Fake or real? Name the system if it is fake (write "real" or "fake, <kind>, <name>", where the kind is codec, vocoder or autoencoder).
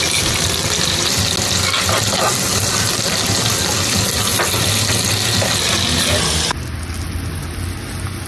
real